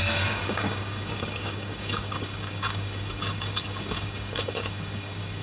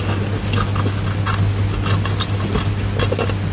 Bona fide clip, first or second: second